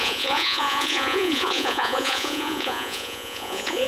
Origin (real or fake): fake